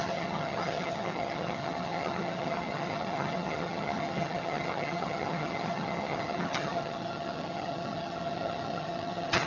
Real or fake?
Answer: fake